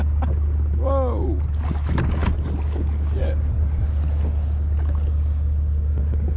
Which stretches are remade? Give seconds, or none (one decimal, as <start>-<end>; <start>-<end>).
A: none